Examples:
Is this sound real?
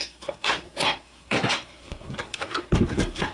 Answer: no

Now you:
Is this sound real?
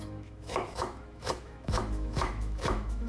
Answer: no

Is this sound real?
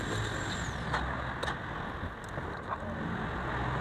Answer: yes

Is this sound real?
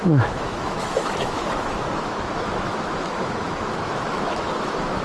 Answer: no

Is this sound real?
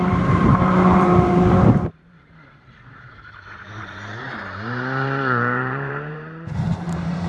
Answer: no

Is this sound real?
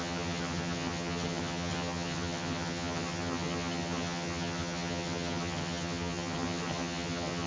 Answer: no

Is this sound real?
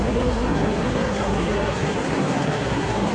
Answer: no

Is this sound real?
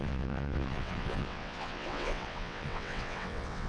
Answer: no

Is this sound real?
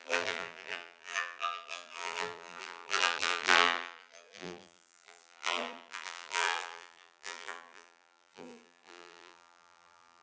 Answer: no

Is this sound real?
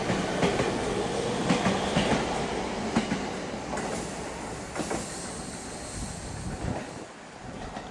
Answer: yes